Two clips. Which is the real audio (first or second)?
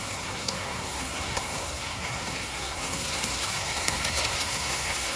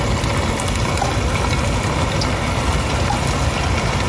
second